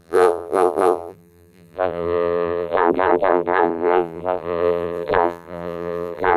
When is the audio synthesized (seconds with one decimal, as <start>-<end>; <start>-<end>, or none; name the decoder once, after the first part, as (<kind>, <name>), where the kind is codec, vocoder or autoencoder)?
0.0-6.4 (vocoder, BigVGAN v2)